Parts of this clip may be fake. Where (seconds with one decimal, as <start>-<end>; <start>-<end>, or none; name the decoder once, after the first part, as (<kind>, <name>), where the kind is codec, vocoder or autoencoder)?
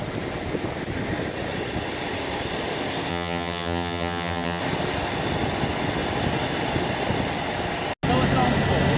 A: 3.1-4.6 (vocoder, HiFi-GAN)